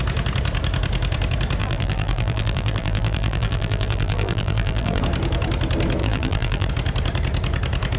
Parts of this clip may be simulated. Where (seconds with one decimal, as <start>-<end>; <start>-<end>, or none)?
1.6-5.0; 6.0-6.7

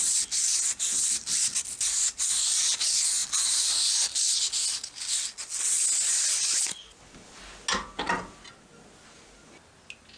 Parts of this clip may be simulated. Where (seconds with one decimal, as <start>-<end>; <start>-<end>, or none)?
1.2-1.8; 3.2-4.4

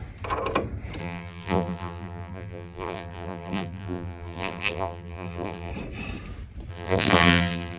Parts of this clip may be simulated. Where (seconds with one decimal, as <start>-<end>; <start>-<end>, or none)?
1.0-5.7; 6.7-7.8

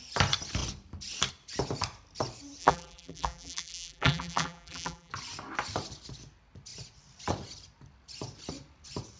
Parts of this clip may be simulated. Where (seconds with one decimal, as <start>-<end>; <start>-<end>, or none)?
2.6-5.1

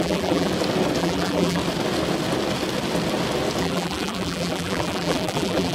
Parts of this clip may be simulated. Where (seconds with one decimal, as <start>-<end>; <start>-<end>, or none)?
0.0-0.5; 1.0-1.6; 3.6-5.7

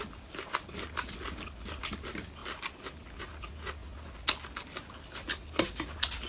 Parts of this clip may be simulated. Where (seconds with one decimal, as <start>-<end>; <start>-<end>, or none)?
none

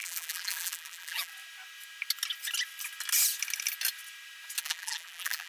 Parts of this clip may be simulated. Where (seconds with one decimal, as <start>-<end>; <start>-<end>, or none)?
0.0-1.3; 4.6-5.5

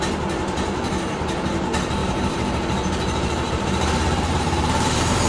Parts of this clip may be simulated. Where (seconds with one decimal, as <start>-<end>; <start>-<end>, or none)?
2.0-5.3